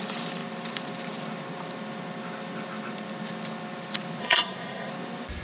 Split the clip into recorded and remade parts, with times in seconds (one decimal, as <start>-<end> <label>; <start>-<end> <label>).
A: 0.0-4.2 recorded; 4.2-4.9 remade; 4.9-5.4 recorded

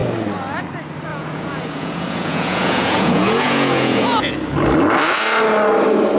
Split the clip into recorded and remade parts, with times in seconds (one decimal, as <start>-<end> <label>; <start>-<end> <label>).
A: 0.0-1.1 recorded; 1.1-4.3 remade; 4.3-6.2 recorded

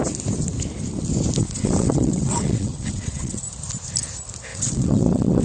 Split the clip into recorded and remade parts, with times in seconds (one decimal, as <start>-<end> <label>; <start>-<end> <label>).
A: 0.0-1.4 recorded; 1.4-3.4 remade; 3.4-4.5 recorded; 4.5-5.4 remade

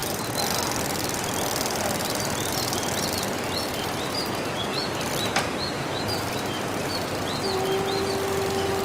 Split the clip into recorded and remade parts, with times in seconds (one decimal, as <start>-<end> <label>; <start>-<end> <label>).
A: 0.0-8.8 recorded

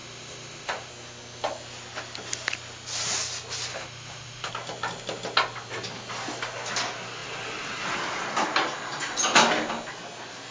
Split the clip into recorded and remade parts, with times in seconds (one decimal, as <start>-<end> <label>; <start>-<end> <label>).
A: 0.0-0.9 remade; 0.9-3.7 recorded; 3.7-4.5 remade; 4.5-10.5 recorded

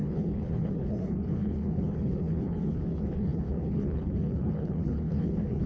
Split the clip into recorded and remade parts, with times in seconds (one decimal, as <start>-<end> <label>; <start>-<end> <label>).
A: 0.0-5.7 remade